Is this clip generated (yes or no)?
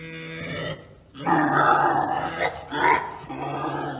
no